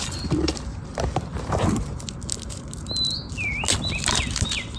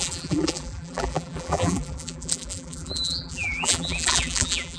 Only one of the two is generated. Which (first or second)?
second